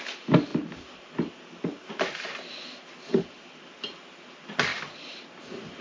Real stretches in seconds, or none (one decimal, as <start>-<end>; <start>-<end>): 0.0-5.8